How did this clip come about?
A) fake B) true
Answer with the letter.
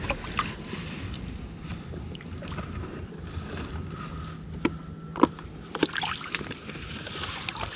B